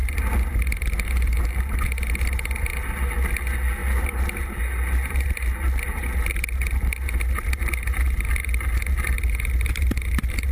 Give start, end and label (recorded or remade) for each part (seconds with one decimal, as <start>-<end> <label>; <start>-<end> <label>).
0.0-10.5 recorded